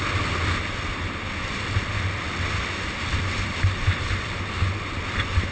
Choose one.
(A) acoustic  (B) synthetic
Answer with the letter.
A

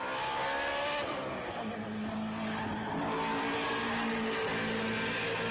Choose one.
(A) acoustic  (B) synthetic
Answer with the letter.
A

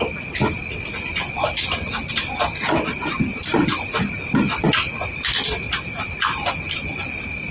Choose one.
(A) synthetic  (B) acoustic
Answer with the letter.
B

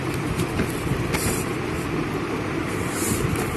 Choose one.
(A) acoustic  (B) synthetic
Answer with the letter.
B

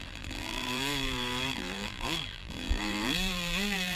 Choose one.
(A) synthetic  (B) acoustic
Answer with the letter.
A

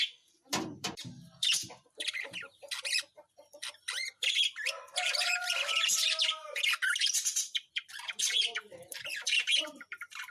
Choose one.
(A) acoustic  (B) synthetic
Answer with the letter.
B